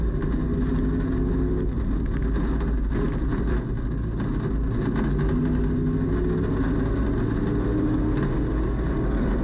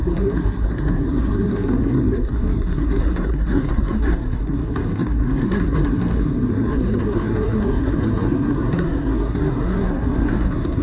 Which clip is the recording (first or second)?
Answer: first